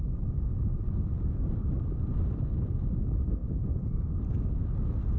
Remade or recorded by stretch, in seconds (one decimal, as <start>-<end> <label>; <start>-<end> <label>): 0.0-5.2 recorded